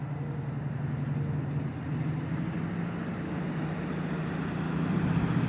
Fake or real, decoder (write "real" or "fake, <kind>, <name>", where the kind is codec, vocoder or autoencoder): real